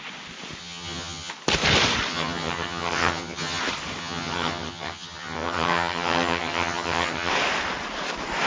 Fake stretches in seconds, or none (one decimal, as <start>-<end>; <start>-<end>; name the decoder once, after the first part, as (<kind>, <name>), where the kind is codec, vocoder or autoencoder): 0.6-1.3 (vocoder, HiFi-GAN); 2.1-3.6; 4.0-7.3